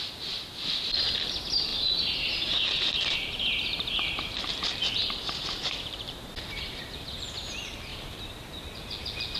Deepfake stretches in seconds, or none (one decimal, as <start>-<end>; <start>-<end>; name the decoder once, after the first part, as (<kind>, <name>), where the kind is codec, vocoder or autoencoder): 1.7-4.6 (vocoder, BigVGAN v2); 5.0-7.5